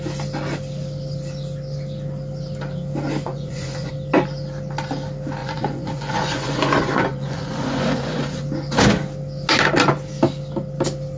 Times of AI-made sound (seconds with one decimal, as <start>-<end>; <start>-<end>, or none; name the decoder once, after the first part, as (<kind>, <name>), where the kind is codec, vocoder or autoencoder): 3.3-3.9 (vocoder, Vocos); 5.4-8.4